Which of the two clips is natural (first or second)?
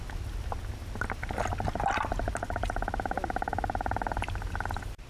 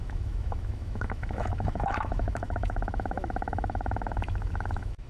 first